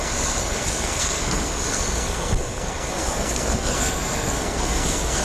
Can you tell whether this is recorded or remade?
remade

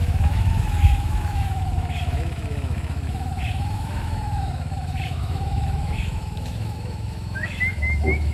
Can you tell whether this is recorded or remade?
remade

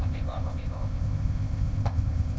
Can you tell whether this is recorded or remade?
remade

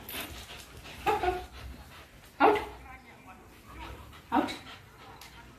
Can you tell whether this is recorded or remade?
recorded